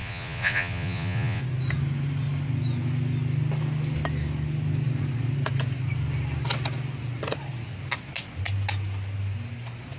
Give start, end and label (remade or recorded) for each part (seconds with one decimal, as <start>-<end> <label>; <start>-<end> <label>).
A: 0.0-1.4 remade; 1.4-10.0 recorded